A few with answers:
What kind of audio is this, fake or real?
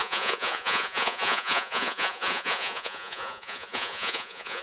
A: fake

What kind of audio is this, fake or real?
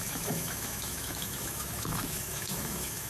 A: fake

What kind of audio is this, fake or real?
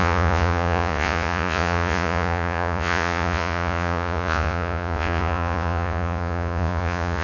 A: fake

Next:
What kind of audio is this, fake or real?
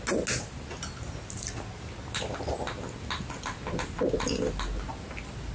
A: real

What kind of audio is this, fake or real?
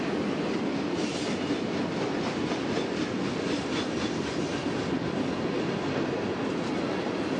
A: real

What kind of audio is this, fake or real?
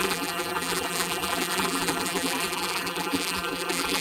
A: fake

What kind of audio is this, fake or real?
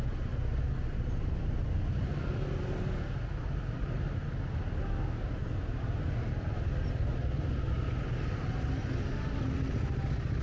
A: real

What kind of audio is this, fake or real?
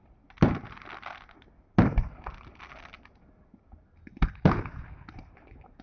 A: real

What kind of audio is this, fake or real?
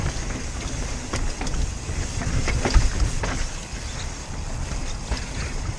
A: real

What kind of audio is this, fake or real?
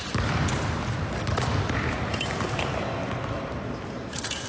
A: real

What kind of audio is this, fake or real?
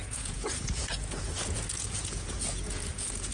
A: fake